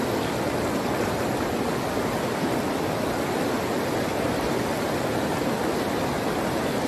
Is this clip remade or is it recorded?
recorded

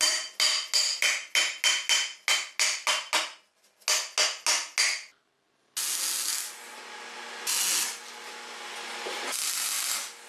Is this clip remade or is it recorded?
recorded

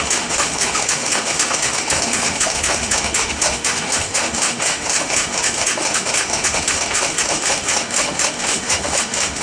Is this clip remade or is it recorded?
remade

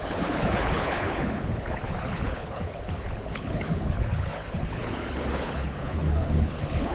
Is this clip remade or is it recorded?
remade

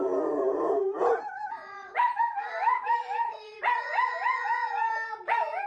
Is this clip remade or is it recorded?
remade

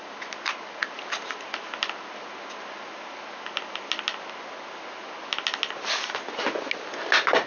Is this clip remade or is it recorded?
recorded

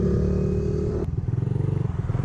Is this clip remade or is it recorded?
recorded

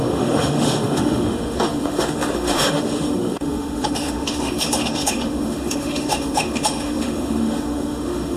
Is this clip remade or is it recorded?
remade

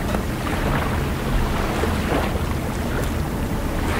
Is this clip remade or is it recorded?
recorded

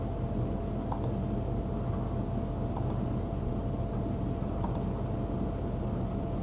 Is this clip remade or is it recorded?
recorded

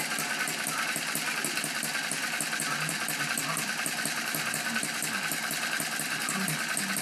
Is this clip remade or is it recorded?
recorded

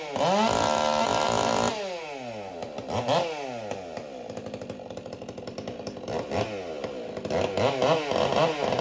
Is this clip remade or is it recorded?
recorded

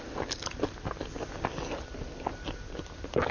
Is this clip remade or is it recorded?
recorded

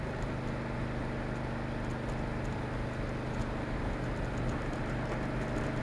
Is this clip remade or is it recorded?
recorded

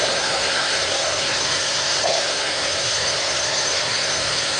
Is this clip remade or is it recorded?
remade